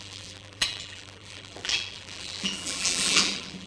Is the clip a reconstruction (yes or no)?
yes